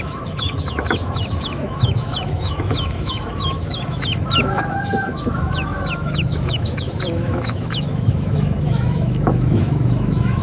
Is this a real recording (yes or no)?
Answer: no